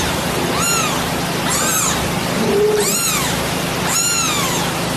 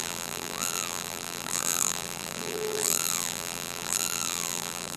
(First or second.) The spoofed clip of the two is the second